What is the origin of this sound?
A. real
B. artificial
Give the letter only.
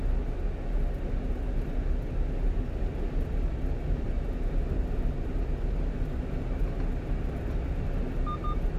A